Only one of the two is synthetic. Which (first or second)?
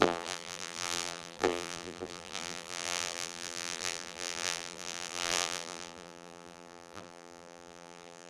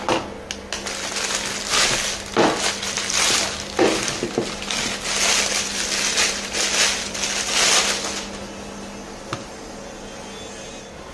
first